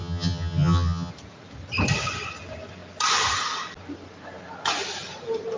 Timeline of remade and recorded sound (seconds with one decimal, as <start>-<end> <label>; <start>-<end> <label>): 0.0-1.1 remade; 1.1-5.6 recorded